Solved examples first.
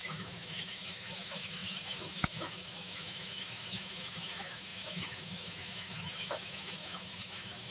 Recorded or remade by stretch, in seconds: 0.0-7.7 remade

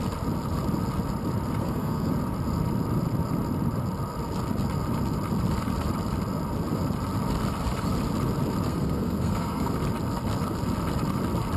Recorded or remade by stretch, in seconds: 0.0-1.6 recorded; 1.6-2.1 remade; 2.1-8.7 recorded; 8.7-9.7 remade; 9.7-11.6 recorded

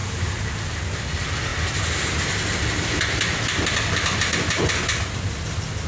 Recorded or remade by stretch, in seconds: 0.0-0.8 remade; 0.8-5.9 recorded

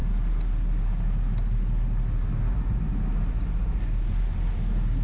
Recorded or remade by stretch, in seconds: 0.0-5.0 recorded